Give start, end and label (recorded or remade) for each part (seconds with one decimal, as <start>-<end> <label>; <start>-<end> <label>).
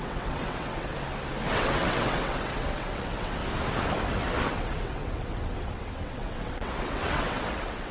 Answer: 0.0-0.9 remade; 0.9-1.5 recorded; 1.5-3.4 remade; 3.4-4.2 recorded; 4.2-7.9 remade